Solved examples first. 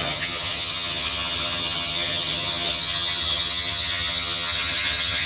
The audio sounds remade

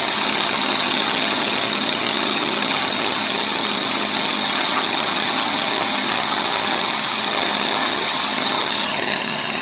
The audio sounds remade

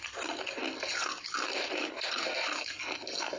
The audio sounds recorded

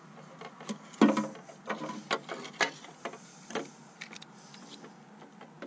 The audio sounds recorded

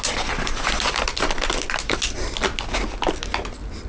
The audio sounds recorded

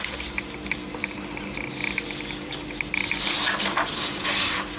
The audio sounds recorded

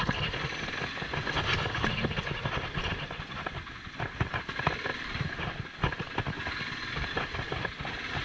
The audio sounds recorded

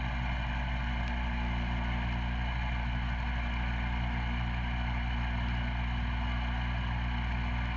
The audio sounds recorded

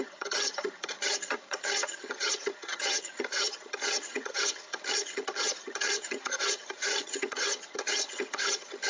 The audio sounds remade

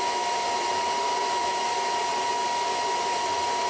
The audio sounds recorded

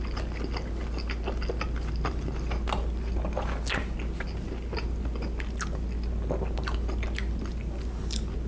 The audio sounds recorded